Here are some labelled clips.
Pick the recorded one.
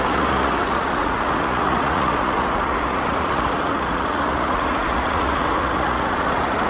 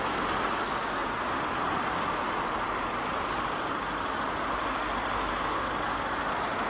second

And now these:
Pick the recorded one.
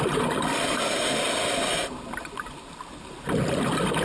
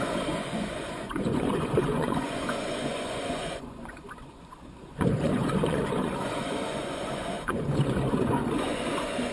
first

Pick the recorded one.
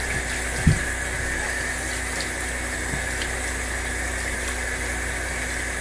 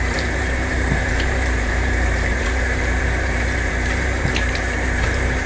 first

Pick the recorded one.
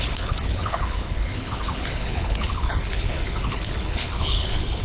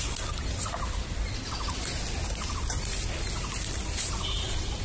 second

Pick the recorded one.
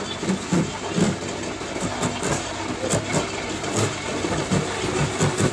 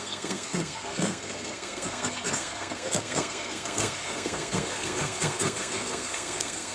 first